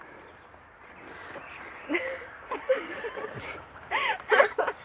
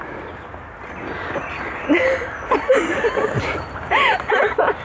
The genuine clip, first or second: second